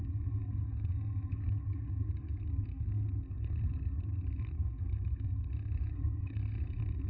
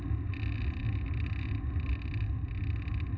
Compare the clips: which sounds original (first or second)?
second